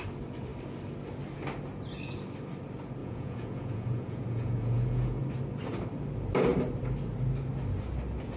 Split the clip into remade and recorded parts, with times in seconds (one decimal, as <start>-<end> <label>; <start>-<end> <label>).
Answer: 0.0-3.0 recorded; 3.0-5.2 remade; 5.2-8.4 recorded